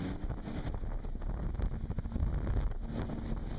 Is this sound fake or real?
real